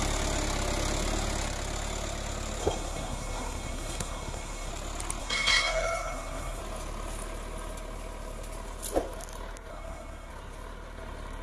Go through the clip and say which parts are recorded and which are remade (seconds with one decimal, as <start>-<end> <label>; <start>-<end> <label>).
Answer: 0.0-2.6 recorded; 2.6-4.7 remade; 4.7-5.2 recorded; 5.2-6.6 remade; 6.6-9.7 recorded; 9.7-10.3 remade; 10.3-11.4 recorded